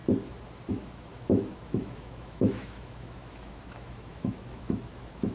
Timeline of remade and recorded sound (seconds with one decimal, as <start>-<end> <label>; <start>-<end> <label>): 0.0-0.7 recorded; 0.7-5.3 remade